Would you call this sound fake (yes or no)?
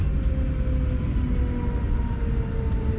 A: no